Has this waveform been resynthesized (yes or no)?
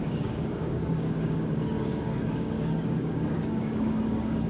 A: yes